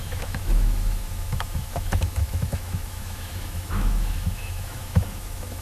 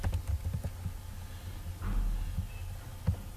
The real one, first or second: second